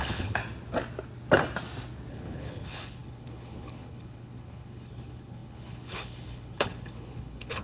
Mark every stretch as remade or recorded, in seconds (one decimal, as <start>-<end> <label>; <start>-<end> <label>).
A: 0.0-0.4 remade; 0.4-2.1 recorded; 2.1-7.6 remade